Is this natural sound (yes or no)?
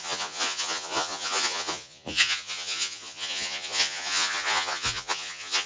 no